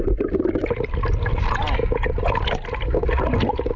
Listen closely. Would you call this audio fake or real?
real